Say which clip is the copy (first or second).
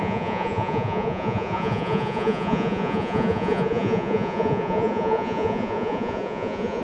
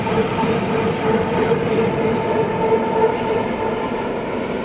first